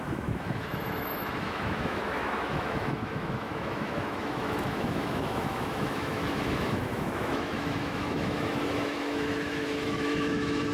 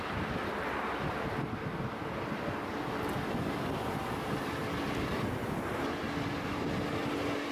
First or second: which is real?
second